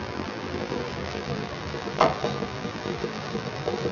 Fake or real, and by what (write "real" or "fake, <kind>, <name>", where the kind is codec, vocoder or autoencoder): fake, vocoder, BigVGAN v2